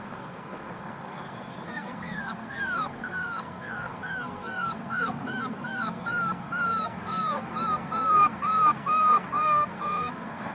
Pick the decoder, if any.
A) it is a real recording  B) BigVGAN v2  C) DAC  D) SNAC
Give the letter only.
D